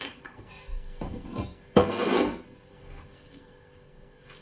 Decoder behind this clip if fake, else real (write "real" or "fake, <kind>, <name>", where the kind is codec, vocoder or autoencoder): fake, codec, SNAC